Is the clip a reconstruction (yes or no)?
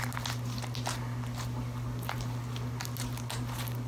no